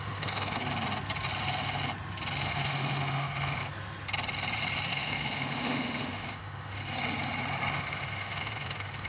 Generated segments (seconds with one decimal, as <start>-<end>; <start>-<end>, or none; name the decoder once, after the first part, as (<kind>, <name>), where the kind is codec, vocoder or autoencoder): 0.0-0.6 (autoencoder, DAC-VAE); 2.4-3.6; 4.9-6.8; 7.7-9.1